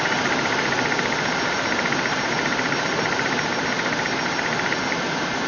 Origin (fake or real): real